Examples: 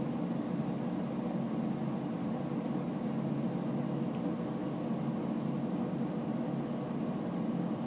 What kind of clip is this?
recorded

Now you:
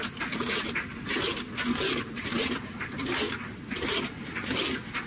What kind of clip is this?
remade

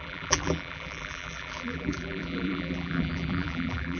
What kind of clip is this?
remade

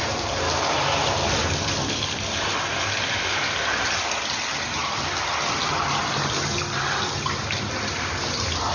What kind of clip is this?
remade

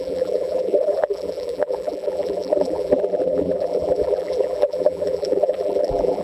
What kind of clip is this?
remade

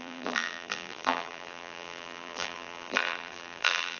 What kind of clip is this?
remade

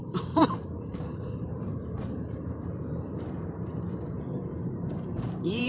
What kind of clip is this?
remade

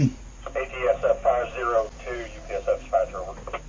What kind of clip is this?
recorded